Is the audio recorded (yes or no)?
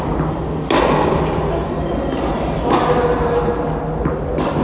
yes